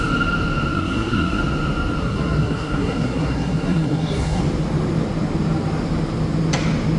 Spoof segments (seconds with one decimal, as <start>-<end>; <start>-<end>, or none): 0.7-1.4; 2.0-4.4